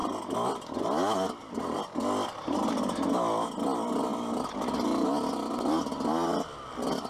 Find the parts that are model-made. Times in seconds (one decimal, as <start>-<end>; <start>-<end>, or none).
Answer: none